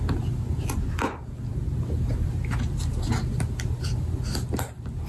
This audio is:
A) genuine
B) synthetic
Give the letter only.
A